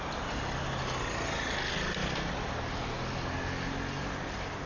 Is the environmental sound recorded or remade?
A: recorded